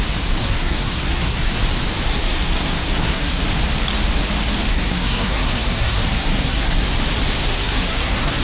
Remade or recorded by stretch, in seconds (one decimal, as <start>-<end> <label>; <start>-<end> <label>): 0.0-0.4 recorded; 0.4-1.6 remade; 1.6-2.1 recorded; 2.1-3.4 remade; 3.4-4.7 recorded; 4.7-6.9 remade; 6.9-7.4 recorded; 7.4-8.4 remade